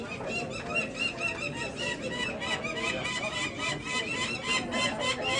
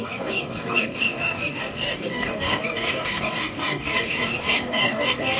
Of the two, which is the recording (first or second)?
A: first